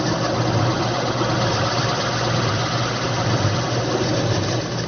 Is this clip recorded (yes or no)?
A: yes